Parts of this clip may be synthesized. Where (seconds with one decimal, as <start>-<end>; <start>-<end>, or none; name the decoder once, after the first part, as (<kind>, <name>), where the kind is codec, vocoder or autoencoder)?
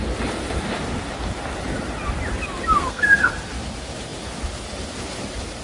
2.8-3.3 (codec, SNAC)